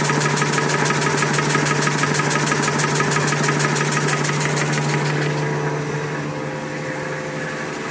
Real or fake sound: real